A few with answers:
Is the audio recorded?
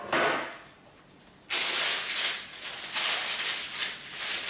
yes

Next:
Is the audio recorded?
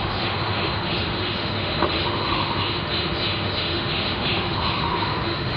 no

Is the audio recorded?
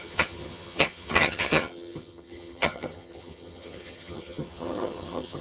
no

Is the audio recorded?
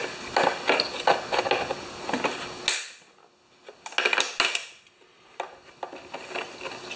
yes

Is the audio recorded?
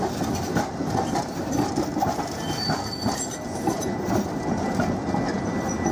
yes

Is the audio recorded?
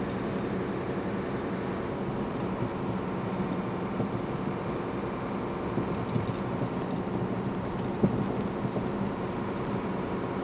yes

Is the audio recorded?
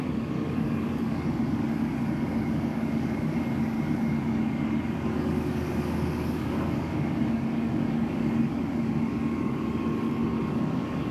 no